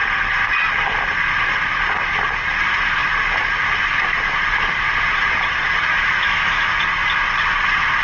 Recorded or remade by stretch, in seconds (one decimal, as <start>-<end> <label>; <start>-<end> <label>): 0.0-5.9 recorded; 5.9-6.7 remade; 6.7-8.0 recorded